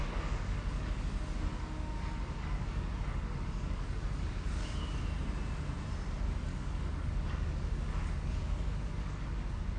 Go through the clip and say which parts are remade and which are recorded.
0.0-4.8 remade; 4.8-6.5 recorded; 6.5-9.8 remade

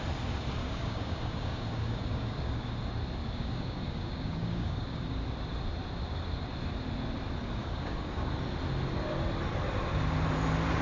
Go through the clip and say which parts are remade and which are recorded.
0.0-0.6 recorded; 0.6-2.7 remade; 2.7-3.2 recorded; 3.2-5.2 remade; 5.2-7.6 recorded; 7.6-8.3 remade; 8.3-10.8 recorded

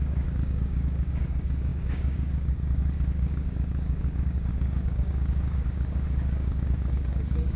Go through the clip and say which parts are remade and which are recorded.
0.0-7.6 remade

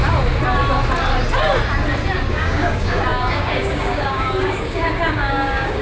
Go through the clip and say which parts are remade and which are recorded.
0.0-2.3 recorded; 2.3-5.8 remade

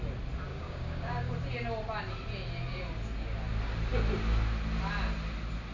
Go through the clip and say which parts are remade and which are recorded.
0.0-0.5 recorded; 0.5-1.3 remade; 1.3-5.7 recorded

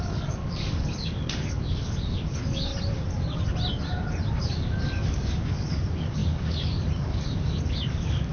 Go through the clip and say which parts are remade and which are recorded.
0.0-2.7 remade; 2.7-4.4 recorded; 4.4-8.3 remade